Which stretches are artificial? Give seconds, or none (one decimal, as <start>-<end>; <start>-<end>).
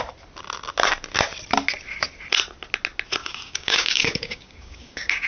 3.2-5.3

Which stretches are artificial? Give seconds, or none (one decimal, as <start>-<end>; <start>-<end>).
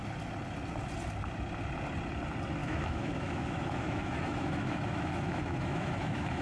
2.6-6.4